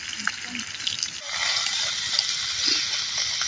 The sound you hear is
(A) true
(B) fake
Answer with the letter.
A